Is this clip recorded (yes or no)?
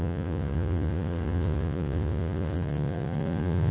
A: no